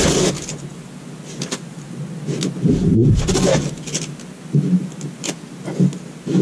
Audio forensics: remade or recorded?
recorded